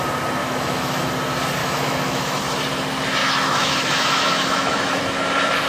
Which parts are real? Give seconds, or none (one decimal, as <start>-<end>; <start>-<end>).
0.0-0.4; 1.1-1.6; 2.4-3.2; 4.9-5.7